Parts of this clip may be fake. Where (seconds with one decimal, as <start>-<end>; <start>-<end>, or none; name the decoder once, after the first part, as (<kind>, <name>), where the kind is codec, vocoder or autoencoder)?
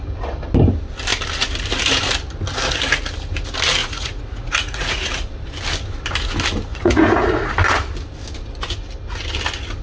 3.8-5.1 (vocoder, Vocos); 6.7-7.5